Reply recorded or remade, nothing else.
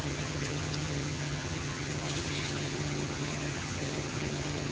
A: remade